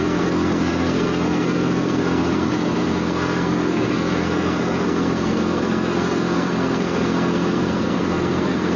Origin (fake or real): fake